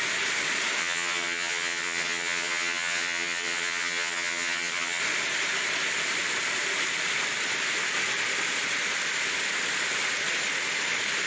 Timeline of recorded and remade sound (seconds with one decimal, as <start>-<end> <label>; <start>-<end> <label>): 0.0-0.8 recorded; 0.8-5.0 remade; 5.0-11.3 recorded